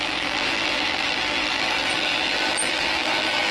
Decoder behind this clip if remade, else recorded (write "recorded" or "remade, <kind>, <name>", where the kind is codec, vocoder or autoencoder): remade, vocoder, BigVGAN v2